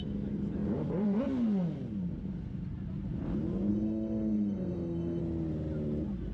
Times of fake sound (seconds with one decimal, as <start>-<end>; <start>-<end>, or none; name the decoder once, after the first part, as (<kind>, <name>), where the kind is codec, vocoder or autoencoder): 3.7-5.2 (codec, SNAC)